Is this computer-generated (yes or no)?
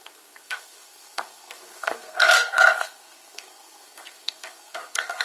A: yes